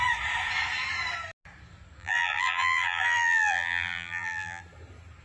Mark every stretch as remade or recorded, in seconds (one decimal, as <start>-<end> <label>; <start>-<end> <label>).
0.0-2.0 recorded; 2.0-4.6 remade; 4.6-5.2 recorded